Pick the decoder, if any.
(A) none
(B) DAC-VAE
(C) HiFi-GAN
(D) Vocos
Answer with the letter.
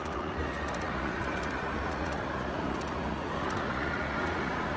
D